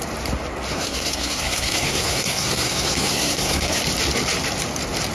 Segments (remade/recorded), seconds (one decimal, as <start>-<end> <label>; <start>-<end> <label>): 0.0-0.7 recorded; 0.7-3.8 remade; 3.8-5.1 recorded